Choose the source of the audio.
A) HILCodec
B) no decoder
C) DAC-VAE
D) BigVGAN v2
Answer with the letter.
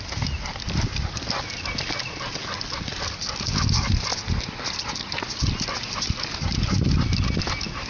B